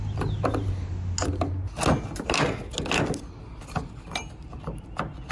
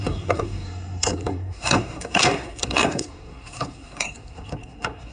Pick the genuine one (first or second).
first